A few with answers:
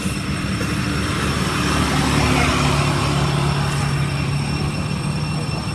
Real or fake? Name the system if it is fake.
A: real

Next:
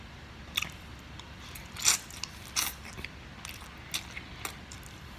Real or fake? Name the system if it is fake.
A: real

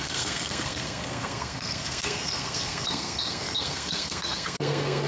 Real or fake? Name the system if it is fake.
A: fake, codec, SNAC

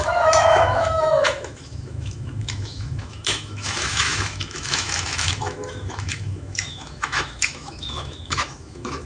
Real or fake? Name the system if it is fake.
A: fake, autoencoder, DAC-VAE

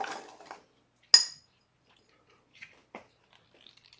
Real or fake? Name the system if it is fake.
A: real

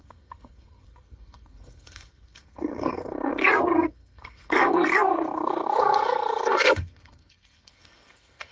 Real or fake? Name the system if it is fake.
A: fake, codec, SNAC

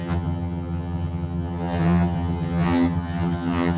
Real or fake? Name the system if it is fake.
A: fake, vocoder, HiFi-GAN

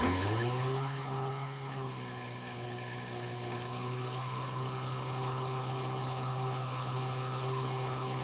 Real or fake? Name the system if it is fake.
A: fake, codec, HILCodec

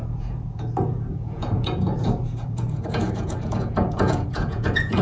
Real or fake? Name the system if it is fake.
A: fake, vocoder, Vocos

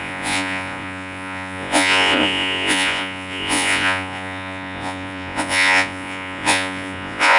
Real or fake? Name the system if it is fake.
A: fake, vocoder, Vocos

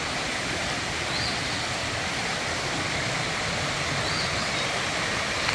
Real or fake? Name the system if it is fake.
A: real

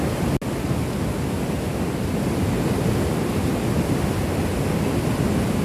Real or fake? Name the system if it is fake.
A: real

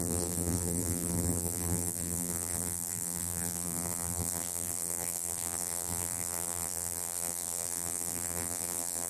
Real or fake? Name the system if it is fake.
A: fake, vocoder, BigVGAN v2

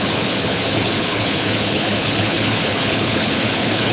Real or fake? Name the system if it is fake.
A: fake, codec, HILCodec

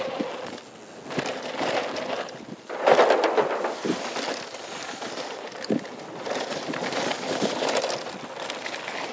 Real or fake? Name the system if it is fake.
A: real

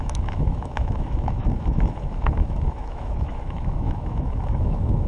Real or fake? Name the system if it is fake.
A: fake, autoencoder, DAC-VAE